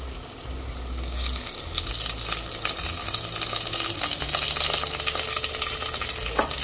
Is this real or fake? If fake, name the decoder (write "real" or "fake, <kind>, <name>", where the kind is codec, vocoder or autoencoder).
real